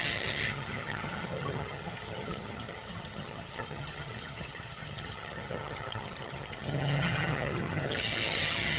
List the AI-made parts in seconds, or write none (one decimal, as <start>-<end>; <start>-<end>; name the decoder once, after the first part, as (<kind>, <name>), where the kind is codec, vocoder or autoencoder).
0.0-8.8 (vocoder, HiFi-GAN)